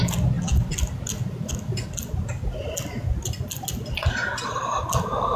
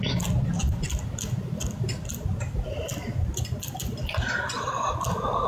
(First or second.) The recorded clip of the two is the first